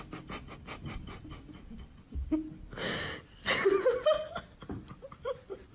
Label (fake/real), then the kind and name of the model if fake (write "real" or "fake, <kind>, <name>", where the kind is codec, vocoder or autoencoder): real